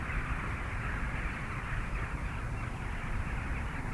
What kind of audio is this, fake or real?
real